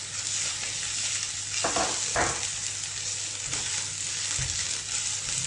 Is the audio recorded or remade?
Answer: recorded